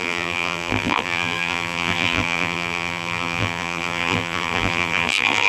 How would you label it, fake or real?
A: fake